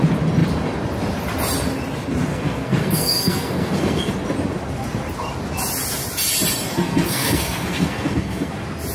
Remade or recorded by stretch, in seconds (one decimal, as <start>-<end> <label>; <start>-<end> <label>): 0.0-2.3 recorded; 2.3-4.1 remade; 4.1-6.7 recorded; 6.7-8.5 remade; 8.5-8.9 recorded